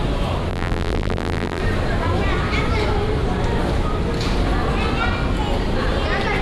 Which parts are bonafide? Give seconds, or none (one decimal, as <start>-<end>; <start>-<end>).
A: 0.0-0.5; 1.6-6.4